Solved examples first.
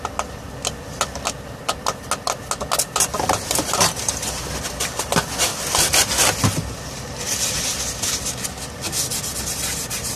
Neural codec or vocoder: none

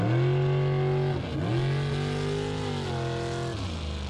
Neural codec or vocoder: none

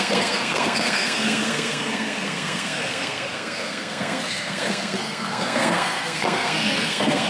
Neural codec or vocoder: codec, SNAC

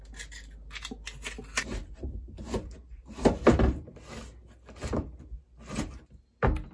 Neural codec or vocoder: none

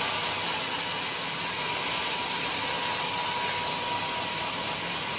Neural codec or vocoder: none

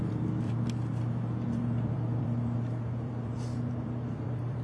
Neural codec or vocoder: vocoder, BigVGAN v2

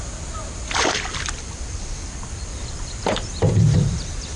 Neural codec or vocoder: vocoder, BigVGAN v2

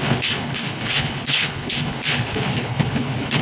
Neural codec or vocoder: codec, HILCodec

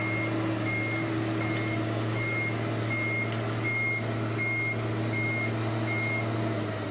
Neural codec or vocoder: none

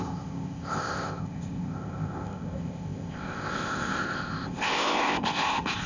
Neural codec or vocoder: codec, ZipCodec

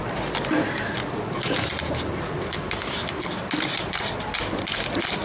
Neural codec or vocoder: none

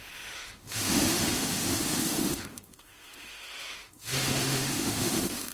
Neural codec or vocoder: autoencoder, DAC-VAE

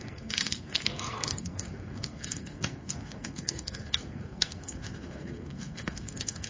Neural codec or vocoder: codec, SNAC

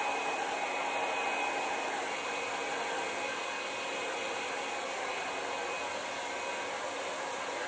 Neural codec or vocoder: none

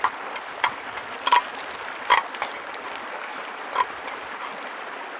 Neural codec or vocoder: none